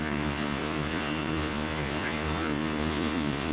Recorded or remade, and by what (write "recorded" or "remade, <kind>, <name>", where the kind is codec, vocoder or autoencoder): remade, vocoder, Vocos